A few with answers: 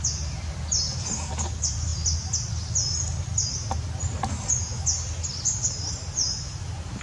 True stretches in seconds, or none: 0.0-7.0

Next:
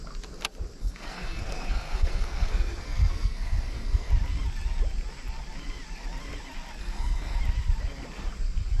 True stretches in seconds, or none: 0.0-0.8; 4.1-6.8; 7.4-8.8